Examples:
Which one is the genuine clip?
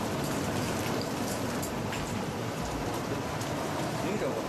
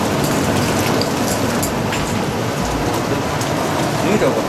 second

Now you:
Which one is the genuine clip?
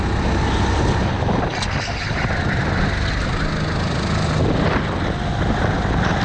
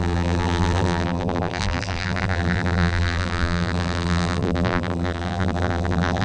first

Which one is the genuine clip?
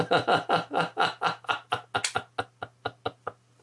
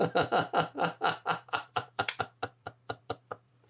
first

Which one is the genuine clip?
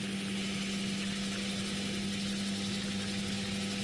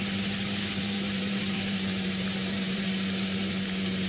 first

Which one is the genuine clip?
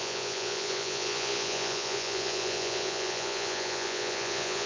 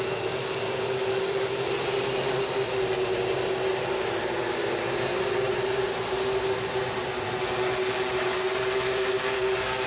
second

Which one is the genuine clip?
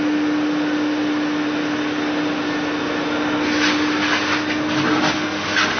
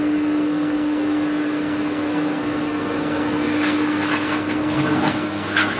first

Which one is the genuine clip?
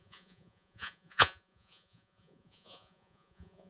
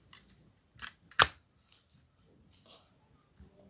second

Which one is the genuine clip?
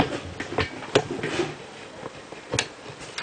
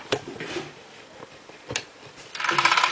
first